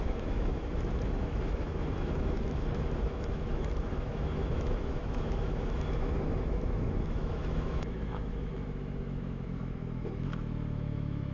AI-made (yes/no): yes